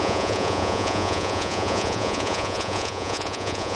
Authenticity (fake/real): fake